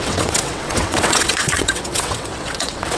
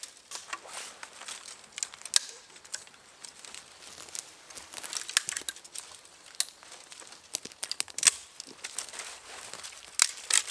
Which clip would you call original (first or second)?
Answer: second